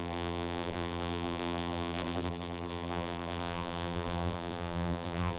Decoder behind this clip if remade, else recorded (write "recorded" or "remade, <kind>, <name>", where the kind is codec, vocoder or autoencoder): remade, vocoder, BigVGAN v2